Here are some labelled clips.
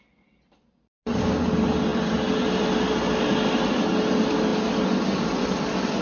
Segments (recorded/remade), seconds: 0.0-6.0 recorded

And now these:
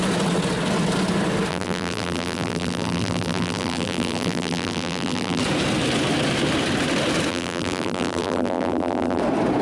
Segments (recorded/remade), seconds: 0.0-1.5 recorded; 1.5-5.4 remade; 5.4-7.3 recorded; 7.3-9.2 remade; 9.2-9.6 recorded

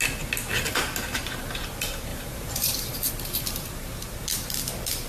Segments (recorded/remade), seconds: 0.0-2.1 recorded; 2.1-3.1 remade; 3.1-5.1 recorded

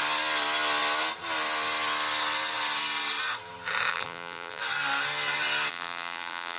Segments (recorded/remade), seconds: 0.0-3.9 recorded; 3.9-4.6 remade; 4.6-5.7 recorded; 5.7-6.6 remade

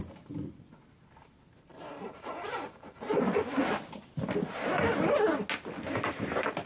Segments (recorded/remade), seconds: 0.0-1.7 recorded; 1.7-3.0 remade; 3.0-6.7 recorded

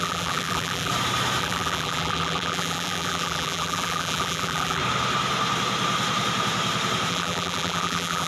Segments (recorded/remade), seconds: 0.0-0.9 remade; 0.9-1.4 recorded; 1.4-4.8 remade; 4.8-7.1 recorded; 7.1-8.3 remade

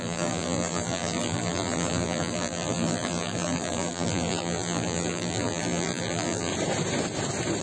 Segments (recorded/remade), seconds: 0.0-6.5 remade; 6.5-7.6 recorded